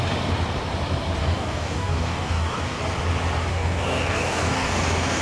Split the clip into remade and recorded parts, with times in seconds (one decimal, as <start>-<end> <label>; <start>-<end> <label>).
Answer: 0.0-1.2 recorded; 1.2-2.8 remade; 2.8-3.5 recorded; 3.5-5.2 remade